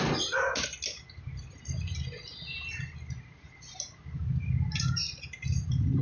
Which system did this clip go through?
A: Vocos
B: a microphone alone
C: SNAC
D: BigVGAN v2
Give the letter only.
B